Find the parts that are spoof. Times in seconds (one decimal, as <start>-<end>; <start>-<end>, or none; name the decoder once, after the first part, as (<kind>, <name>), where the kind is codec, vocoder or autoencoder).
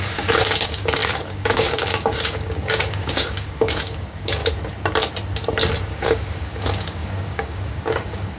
0.0-4.4 (codec, DAC); 5.8-8.4